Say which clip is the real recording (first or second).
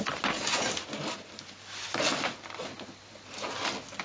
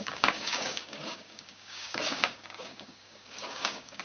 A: first